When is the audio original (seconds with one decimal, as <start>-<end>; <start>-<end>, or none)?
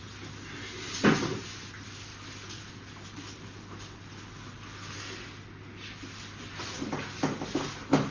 0.0-8.1